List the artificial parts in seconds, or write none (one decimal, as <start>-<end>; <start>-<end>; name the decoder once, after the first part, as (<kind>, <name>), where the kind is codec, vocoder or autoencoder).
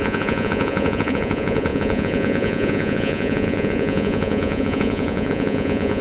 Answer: 0.0-6.0 (vocoder, Vocos)